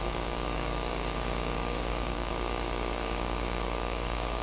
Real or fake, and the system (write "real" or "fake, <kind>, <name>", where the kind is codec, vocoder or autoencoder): fake, codec, DAC